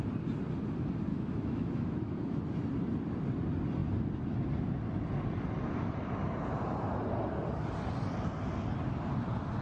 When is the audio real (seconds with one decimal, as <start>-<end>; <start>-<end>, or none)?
0.0-1.1; 2.4-9.6

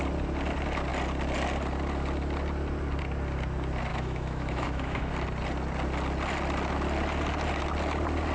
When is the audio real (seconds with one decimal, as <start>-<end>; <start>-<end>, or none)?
0.0-3.9; 5.1-8.3

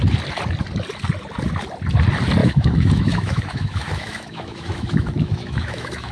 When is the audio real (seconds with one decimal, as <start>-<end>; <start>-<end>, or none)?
0.0-2.4

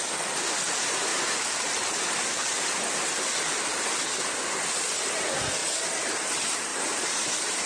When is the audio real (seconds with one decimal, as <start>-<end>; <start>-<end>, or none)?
0.0-7.7

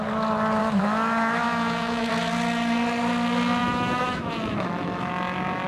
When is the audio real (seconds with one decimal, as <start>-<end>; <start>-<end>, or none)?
0.0-0.6; 2.1-3.6; 5.1-5.7